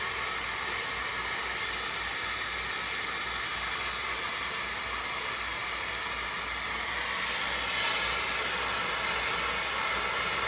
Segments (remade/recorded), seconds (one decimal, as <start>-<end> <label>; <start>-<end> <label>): 0.0-10.5 recorded